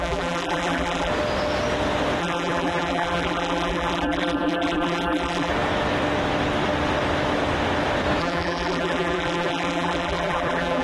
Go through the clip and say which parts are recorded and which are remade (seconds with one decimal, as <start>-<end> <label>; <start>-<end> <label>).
0.0-1.1 remade; 1.1-2.2 recorded; 2.2-5.5 remade; 5.5-8.2 recorded; 8.2-10.8 remade